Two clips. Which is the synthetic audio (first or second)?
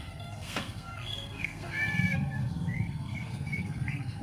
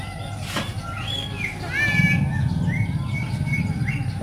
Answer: first